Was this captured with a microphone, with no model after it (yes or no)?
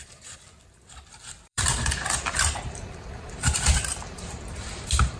no